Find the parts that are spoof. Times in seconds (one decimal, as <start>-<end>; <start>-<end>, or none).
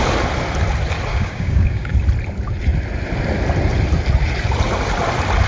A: 1.1-1.9